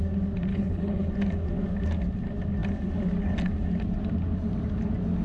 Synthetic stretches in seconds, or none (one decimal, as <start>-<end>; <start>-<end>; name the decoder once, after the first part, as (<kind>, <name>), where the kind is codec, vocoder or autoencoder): 0.5-1.1 (codec, HILCodec)